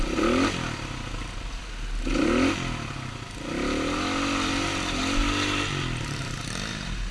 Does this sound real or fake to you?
real